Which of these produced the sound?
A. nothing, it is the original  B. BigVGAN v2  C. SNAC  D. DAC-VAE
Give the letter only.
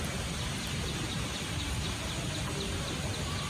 A